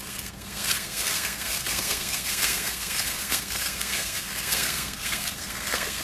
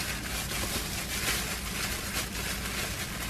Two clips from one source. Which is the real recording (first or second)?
second